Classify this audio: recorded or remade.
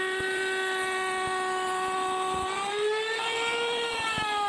recorded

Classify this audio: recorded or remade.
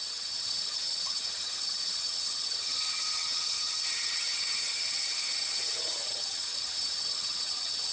remade